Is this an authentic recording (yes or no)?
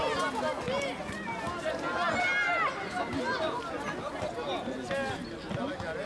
yes